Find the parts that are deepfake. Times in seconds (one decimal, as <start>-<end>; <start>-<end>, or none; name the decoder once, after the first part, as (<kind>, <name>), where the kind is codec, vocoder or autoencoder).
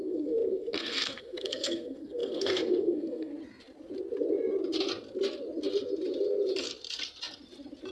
0.0-3.3 (codec, SNAC)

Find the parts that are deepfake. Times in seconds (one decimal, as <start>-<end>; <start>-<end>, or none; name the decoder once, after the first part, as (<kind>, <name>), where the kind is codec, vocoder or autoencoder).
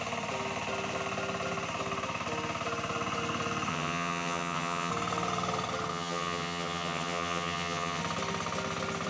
3.7-4.9 (vocoder, HiFi-GAN); 5.9-8.0